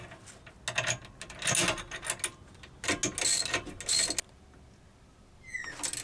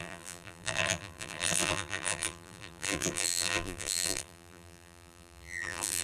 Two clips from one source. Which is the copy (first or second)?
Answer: second